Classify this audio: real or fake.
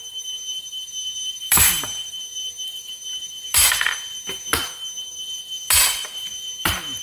fake